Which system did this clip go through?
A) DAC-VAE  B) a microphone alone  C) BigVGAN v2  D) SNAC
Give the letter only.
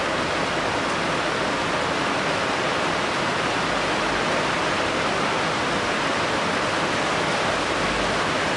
B